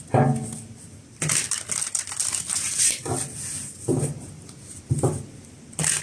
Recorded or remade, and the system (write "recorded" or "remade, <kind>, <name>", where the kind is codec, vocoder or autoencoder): recorded